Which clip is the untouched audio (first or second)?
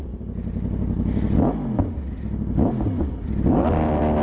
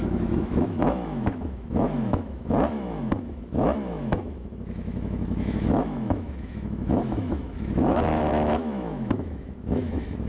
first